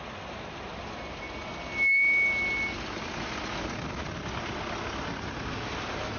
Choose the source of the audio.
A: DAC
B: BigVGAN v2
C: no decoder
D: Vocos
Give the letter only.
C